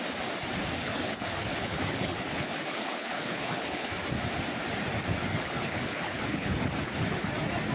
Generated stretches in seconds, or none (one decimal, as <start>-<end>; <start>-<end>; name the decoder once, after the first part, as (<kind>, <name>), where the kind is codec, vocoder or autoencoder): 0.8-3.9 (codec, HILCodec); 5.3-7.3